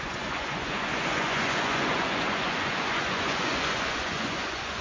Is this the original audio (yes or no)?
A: no